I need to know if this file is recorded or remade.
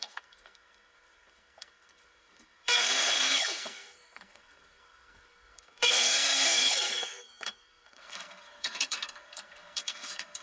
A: remade